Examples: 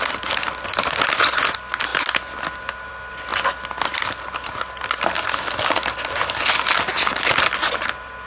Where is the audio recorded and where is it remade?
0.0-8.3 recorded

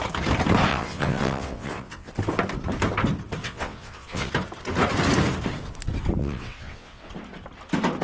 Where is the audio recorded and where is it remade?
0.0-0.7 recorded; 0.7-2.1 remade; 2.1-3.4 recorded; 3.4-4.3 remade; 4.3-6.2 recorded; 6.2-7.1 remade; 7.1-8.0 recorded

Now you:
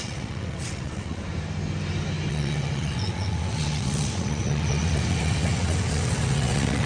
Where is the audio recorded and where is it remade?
0.0-1.2 remade; 1.2-2.3 recorded; 2.3-6.9 remade